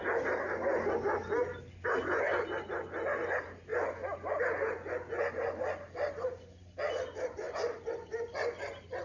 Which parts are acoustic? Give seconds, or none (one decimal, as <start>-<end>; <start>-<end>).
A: 0.0-9.0